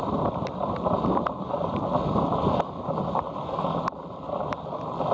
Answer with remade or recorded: recorded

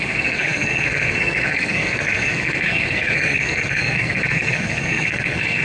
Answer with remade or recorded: remade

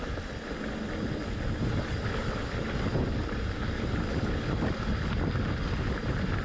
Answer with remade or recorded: recorded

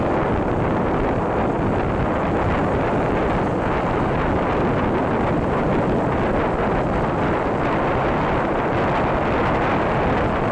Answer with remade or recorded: recorded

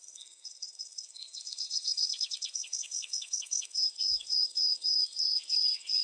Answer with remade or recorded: remade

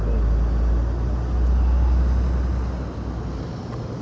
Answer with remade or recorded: recorded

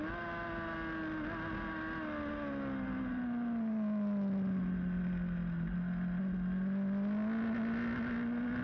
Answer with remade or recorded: recorded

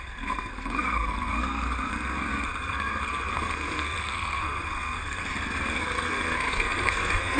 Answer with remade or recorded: remade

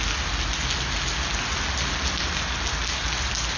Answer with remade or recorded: recorded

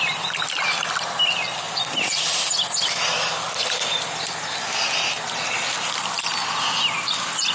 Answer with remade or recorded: recorded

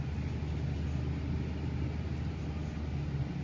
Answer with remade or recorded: recorded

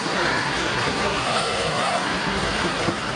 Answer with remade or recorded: remade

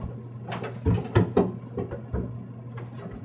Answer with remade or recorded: recorded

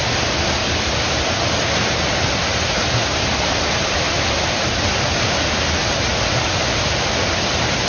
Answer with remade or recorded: recorded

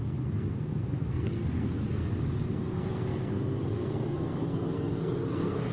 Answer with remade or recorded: remade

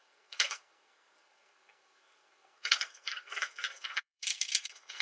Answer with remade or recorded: remade